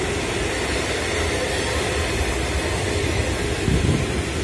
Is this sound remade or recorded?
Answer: recorded